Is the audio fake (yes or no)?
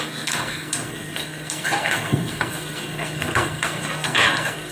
yes